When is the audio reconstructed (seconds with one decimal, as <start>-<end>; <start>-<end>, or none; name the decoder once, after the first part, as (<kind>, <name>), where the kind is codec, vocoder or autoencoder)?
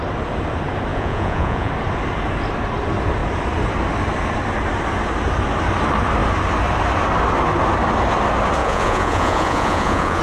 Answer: 0.9-1.7 (vocoder, Vocos); 8.6-10.2